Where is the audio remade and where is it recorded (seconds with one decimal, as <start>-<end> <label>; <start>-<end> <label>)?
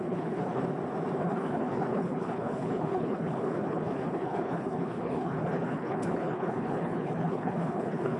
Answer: 0.0-0.6 remade; 0.6-1.2 recorded; 1.2-8.2 remade